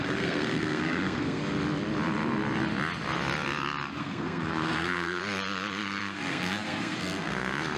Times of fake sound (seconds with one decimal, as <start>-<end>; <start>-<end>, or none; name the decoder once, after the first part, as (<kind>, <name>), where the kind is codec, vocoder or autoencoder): 0.0-1.4 (codec, SNAC); 4.0-5.2; 6.0-7.8